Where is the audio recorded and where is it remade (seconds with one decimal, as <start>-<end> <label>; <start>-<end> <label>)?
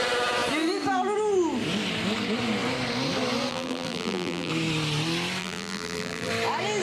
0.0-3.5 recorded; 3.5-4.5 remade; 4.5-5.4 recorded; 5.4-6.3 remade; 6.3-6.8 recorded